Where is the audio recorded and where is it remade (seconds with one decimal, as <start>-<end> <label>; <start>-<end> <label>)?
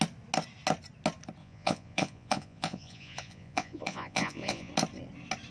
0.0-1.4 recorded; 1.4-4.7 remade; 4.7-5.5 recorded